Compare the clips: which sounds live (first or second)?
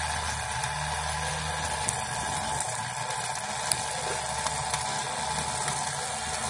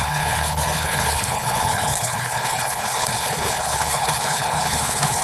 first